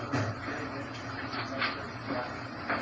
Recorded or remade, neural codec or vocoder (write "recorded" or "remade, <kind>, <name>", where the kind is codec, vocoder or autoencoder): recorded